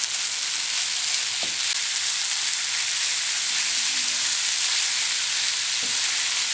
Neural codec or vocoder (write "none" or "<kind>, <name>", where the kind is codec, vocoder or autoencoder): none